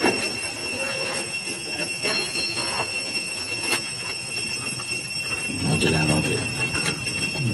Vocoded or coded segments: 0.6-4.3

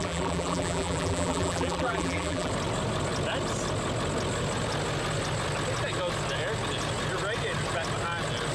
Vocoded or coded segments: 0.0-2.5

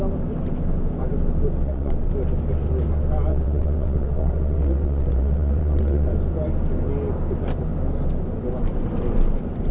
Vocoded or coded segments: 1.6-2.1; 3.3-6.1

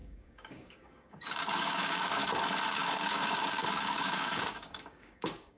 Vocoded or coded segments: 0.0-2.2; 2.7-5.6